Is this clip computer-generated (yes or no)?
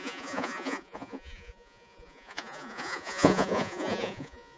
yes